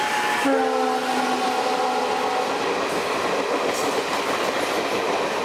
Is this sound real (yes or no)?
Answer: yes